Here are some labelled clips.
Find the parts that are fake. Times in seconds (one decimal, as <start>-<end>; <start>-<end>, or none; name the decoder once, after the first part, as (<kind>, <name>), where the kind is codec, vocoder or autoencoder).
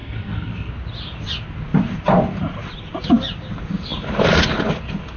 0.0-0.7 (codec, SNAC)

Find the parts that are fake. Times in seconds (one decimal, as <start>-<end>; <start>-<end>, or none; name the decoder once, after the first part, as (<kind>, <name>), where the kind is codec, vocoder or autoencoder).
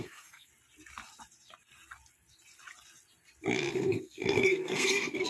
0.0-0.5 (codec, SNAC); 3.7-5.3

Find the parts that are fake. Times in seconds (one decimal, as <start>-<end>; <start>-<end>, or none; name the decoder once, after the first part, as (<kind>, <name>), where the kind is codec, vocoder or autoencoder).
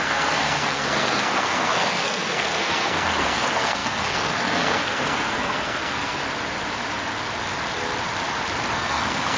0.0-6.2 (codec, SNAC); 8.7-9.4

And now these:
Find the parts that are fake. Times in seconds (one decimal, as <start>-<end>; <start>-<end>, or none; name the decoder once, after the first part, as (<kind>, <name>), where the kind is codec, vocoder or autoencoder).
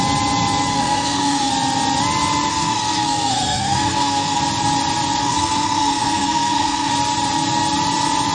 0.7-1.5 (codec, SNAC); 2.5-4.4; 5.2-6.9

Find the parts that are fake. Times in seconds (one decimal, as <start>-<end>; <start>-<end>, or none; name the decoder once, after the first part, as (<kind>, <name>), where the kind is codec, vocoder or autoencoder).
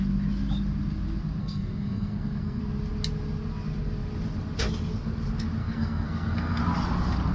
1.4-2.6 (codec, SNAC); 5.6-6.6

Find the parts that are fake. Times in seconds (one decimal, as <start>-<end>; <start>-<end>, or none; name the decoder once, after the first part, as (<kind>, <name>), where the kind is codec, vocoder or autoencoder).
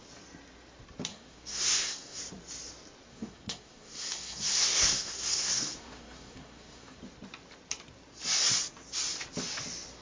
1.1-2.2 (codec, SNAC); 3.1-7.0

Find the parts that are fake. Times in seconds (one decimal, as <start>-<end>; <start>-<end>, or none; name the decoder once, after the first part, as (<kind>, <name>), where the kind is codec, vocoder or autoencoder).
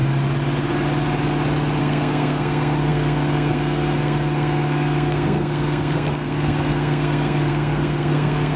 1.8-8.6 (codec, SNAC)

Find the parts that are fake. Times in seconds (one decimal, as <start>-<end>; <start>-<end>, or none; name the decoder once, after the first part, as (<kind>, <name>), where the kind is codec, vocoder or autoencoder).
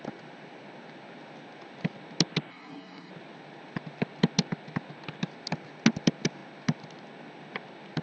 2.5-3.1 (codec, SNAC)